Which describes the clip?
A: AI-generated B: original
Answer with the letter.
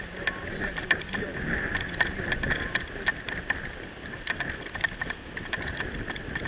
B